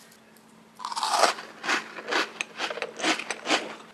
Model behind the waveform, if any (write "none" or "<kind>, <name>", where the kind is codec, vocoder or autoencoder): none